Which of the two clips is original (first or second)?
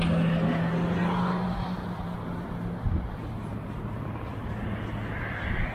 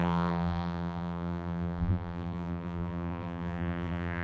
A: first